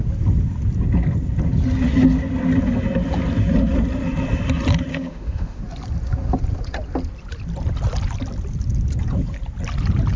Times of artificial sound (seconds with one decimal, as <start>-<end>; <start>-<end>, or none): 4.9-5.6